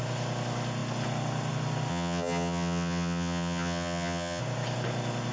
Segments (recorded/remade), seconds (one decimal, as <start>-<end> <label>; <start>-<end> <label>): 0.0-1.9 recorded; 1.9-4.4 remade; 4.4-5.3 recorded